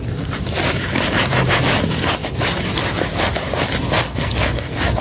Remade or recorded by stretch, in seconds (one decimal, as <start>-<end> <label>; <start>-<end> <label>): 0.0-4.1 recorded; 4.1-5.0 remade